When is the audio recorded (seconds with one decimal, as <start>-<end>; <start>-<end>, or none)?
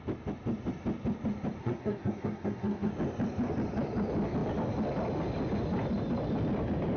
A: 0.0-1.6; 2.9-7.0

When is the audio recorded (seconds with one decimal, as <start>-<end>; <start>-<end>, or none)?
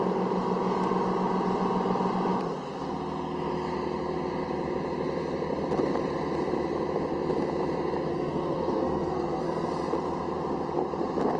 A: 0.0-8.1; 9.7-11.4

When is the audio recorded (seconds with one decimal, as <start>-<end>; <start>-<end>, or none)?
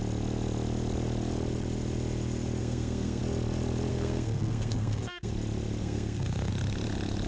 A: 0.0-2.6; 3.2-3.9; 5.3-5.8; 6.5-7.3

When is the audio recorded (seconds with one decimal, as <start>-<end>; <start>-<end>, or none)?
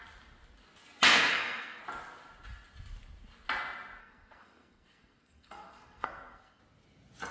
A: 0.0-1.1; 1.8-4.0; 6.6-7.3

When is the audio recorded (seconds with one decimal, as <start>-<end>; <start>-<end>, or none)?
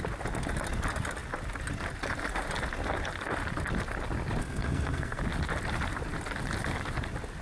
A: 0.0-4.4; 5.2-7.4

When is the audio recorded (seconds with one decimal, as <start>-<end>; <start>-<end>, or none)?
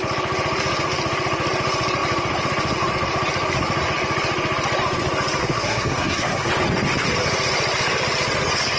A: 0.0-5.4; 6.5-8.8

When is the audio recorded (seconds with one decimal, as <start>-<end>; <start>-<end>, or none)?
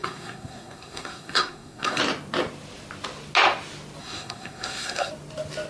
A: 2.0-4.0; 5.1-5.7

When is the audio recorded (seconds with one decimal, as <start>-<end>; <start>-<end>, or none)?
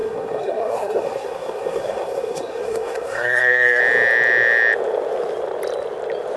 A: 3.8-6.4